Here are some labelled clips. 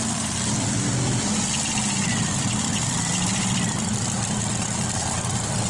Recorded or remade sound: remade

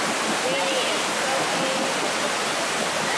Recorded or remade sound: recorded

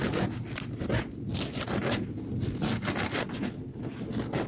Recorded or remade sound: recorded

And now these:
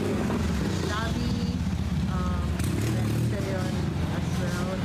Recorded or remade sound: recorded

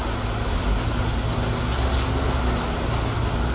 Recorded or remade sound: recorded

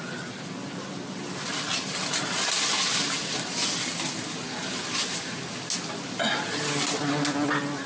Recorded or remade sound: recorded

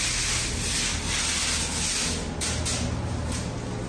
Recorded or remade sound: recorded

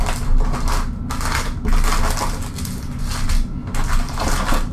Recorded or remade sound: recorded